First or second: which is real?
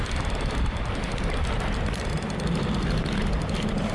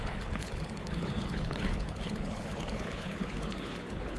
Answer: first